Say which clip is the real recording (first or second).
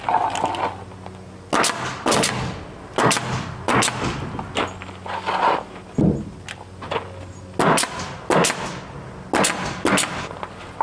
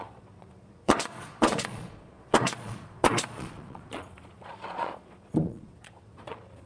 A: first